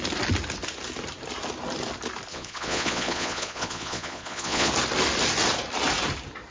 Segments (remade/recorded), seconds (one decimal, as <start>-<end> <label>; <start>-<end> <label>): 0.0-2.3 recorded; 2.3-4.7 remade; 4.7-6.5 recorded